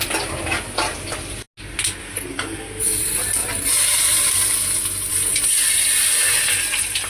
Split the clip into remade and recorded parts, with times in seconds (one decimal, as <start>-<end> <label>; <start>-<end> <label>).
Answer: 0.0-2.0 recorded; 2.0-3.0 remade; 3.0-7.1 recorded